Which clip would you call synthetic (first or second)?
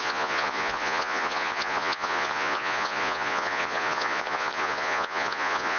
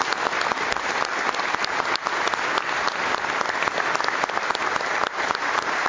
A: first